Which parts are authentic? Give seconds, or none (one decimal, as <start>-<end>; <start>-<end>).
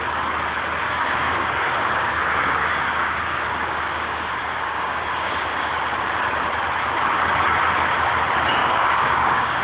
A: 0.0-0.8; 5.7-8.6